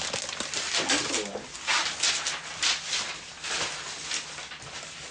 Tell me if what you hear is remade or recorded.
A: recorded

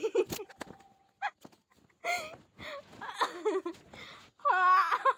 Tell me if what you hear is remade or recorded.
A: recorded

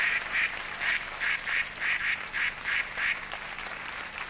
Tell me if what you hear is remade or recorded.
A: remade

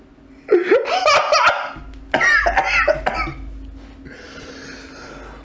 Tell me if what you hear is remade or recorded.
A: recorded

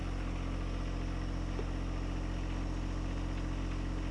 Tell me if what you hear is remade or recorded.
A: recorded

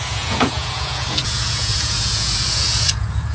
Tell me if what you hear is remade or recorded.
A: remade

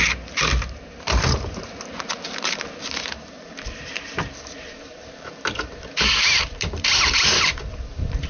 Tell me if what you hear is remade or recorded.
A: remade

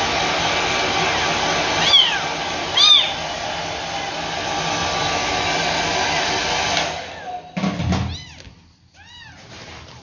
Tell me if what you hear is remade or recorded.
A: recorded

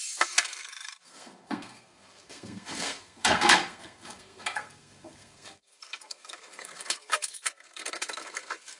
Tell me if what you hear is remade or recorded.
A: remade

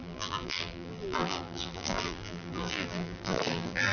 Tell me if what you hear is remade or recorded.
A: remade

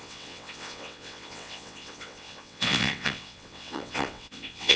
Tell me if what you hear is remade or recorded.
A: remade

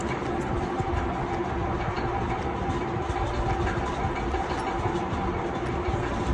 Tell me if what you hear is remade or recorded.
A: recorded